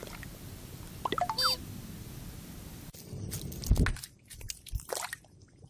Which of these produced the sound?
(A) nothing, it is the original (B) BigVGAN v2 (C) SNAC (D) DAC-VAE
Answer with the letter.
A